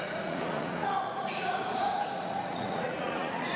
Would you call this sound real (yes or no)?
no